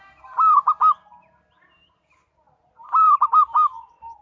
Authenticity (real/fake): real